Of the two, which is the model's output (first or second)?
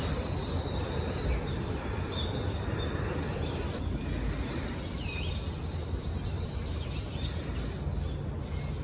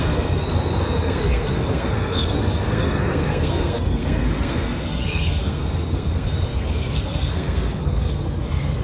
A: second